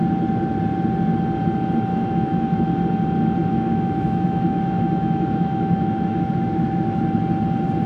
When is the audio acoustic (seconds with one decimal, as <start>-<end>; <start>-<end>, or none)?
0.0-1.9; 2.8-3.4; 7.0-7.9